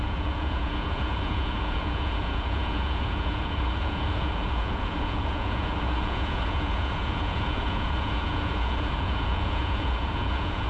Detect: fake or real fake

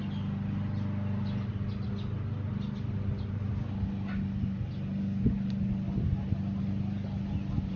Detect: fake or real real